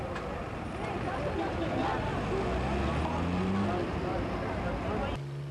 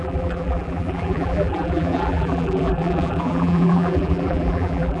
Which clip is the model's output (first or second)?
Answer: second